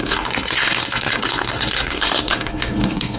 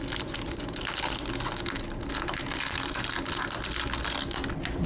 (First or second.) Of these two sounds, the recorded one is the second